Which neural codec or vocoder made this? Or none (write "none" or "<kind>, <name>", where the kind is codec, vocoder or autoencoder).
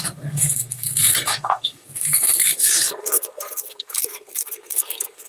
codec, SNAC